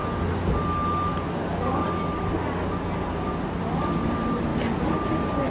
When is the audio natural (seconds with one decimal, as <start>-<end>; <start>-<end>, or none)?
0.0-5.5